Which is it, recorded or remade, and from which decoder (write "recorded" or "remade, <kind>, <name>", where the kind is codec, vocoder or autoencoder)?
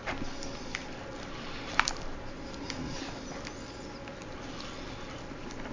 recorded